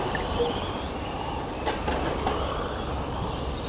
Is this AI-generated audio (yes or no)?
no